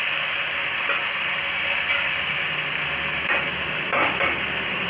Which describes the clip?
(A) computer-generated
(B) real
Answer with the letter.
B